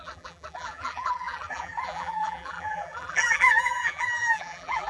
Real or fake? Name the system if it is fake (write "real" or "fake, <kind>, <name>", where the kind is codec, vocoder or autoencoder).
fake, vocoder, BigVGAN v2